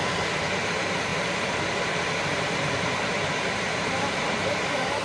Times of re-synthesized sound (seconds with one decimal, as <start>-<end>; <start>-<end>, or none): 0.0-5.0